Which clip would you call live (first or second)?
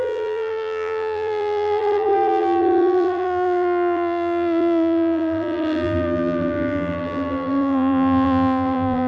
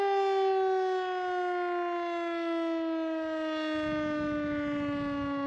second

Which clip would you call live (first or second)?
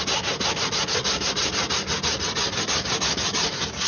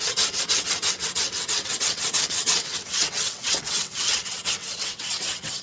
first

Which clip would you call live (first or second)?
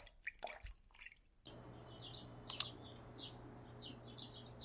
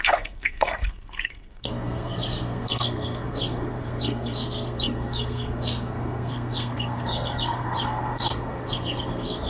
first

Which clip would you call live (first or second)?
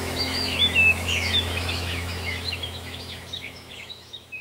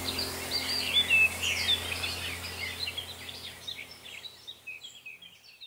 second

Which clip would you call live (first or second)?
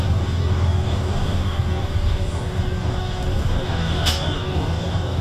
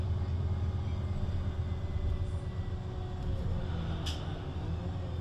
second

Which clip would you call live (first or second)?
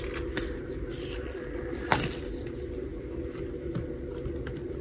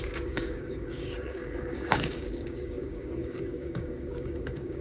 first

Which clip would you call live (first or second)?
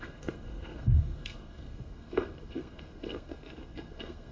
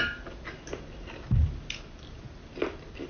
second